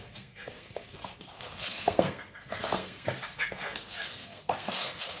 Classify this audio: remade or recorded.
remade